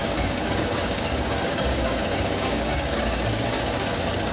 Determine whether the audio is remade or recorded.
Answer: remade